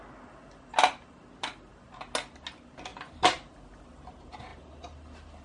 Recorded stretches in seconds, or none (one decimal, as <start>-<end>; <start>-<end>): 0.0-5.4